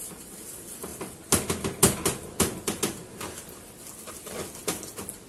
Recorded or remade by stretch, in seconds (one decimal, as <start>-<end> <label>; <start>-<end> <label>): 0.0-5.3 recorded

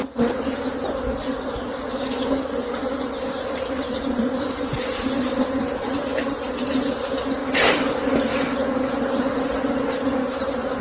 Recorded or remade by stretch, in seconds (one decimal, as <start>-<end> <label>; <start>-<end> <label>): 0.0-2.6 recorded; 2.6-6.9 remade; 6.9-10.2 recorded; 10.2-10.8 remade

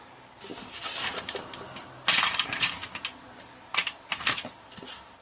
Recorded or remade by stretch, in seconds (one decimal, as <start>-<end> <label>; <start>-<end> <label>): 0.0-5.2 recorded

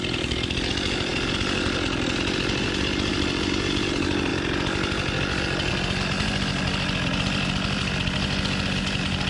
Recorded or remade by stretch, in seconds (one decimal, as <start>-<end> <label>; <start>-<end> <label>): 0.0-9.3 recorded

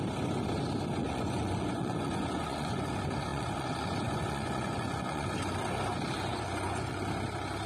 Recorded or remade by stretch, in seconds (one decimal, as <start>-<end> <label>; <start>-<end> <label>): 0.0-1.0 recorded; 1.0-2.9 remade; 2.9-3.3 recorded; 3.3-5.3 remade; 5.3-6.3 recorded; 6.3-7.0 remade; 7.0-7.7 recorded

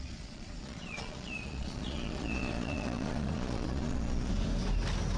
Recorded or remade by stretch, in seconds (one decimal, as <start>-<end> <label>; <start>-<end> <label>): 0.0-4.3 remade; 4.3-5.2 recorded